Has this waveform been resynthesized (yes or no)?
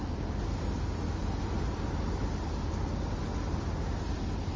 no